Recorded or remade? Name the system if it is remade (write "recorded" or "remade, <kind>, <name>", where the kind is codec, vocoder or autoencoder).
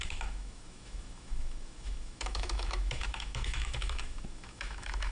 remade, autoencoder, DAC-VAE